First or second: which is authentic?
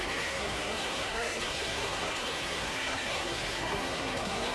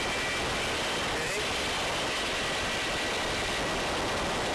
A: second